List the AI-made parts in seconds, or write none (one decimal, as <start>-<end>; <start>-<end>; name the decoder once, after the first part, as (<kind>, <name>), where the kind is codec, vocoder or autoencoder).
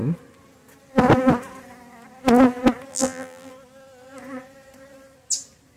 2.9-3.5 (vocoder, BigVGAN v2)